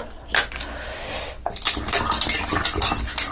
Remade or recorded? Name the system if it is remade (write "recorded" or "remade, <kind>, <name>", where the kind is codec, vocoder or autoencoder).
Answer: recorded